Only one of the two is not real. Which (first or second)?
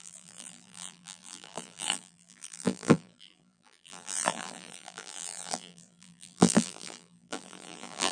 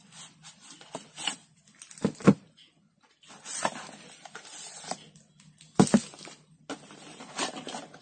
first